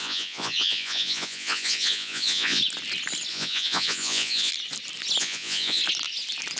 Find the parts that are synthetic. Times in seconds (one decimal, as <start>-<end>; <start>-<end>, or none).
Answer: 0.0-2.6; 3.3-4.5; 5.2-5.8